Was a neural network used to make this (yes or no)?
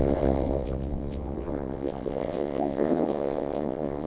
yes